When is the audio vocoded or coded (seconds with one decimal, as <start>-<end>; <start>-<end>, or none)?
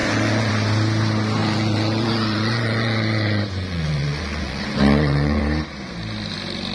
0.0-0.5; 1.4-5.4